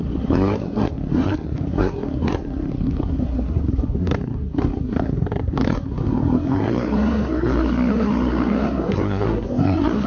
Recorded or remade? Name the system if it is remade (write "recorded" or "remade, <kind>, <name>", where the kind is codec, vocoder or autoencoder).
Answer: remade, codec, SNAC